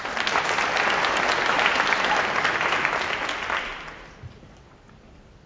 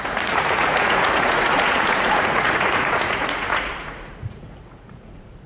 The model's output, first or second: second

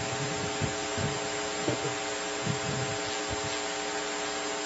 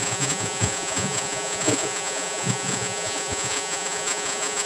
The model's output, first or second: second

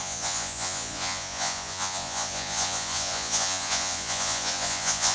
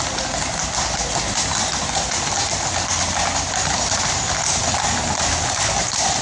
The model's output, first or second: first